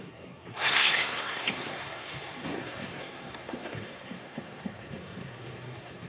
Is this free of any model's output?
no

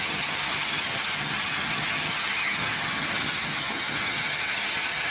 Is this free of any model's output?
no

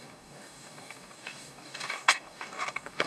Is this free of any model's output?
no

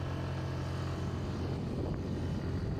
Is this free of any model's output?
yes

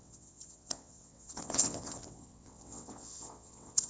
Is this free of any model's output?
no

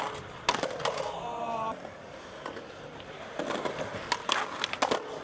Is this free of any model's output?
yes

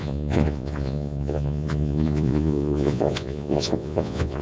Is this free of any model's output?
no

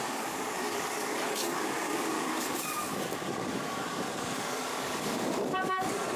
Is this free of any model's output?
no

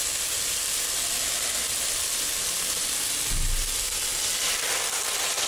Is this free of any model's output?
yes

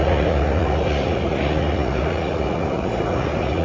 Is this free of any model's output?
no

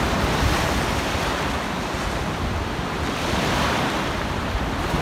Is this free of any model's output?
yes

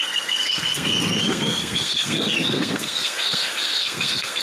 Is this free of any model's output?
no